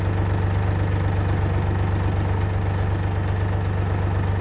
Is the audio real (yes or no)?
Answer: yes